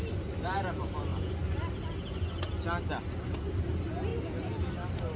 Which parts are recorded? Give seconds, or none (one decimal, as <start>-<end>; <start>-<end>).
0.0-5.2